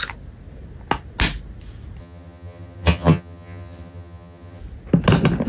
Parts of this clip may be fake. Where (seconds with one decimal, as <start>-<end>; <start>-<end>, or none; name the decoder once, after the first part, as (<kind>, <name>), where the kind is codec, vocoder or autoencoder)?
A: 2.0-4.6 (vocoder, HiFi-GAN)